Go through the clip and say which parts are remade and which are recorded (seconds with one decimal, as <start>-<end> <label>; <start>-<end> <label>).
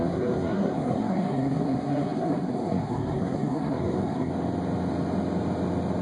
0.0-4.3 remade; 4.3-6.0 recorded